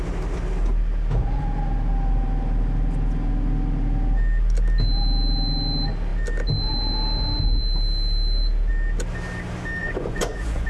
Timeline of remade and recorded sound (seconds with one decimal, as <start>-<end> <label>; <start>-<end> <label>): 0.0-9.8 recorded; 9.8-10.7 remade